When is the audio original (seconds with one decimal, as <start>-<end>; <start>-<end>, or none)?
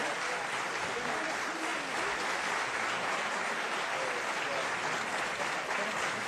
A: 0.0-6.3